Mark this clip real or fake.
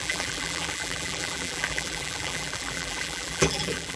fake